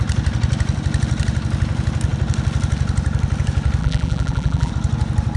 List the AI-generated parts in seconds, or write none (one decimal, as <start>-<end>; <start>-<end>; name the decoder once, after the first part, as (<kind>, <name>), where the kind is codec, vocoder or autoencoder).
3.8-4.7 (vocoder, BigVGAN v2)